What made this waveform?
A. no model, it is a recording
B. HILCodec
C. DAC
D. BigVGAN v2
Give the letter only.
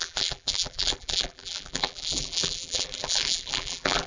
D